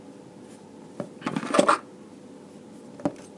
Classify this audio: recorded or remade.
recorded